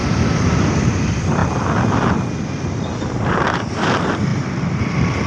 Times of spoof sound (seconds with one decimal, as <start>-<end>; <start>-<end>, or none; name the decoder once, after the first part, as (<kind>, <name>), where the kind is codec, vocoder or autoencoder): 0.6-1.4 (vocoder, BigVGAN v2); 3.2-5.3